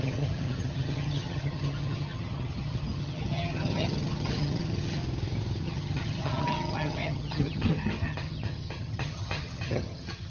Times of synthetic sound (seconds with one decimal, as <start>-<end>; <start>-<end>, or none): 0.0-5.0; 5.6-10.3